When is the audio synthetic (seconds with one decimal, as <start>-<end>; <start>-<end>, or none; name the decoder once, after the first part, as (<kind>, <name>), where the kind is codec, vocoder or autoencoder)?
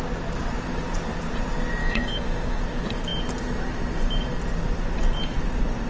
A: 1.8-2.6 (autoencoder, DAC-VAE)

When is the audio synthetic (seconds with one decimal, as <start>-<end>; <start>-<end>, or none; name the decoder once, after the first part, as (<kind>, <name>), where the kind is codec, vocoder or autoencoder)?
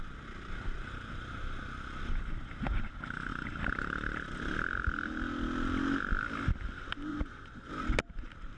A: 7.1-7.7 (vocoder, Vocos)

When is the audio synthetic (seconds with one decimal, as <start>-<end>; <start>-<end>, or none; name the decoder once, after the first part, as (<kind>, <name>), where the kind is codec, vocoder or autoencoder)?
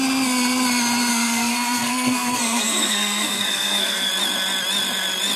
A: 1.1-4.1 (codec, SNAC)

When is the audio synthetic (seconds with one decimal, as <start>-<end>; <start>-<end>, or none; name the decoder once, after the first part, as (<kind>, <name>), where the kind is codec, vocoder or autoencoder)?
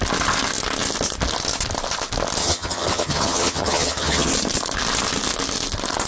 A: 2.4-4.3 (vocoder, HiFi-GAN)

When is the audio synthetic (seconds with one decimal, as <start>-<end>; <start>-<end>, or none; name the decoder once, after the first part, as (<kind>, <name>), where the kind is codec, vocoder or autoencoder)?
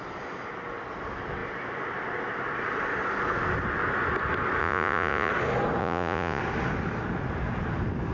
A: 4.6-5.3 (vocoder, Vocos); 5.8-6.4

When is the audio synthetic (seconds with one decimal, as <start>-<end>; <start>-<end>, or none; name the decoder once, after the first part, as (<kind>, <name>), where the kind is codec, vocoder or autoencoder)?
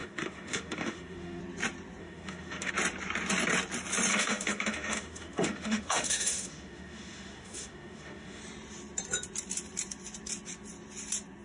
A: 0.0-1.4 (autoencoder, DAC-VAE); 2.0-2.7; 4.1-8.4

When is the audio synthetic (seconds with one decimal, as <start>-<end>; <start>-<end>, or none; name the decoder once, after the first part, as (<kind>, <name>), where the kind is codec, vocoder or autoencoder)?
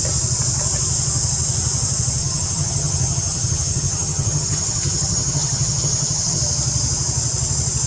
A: 2.2-6.4 (vocoder, HiFi-GAN)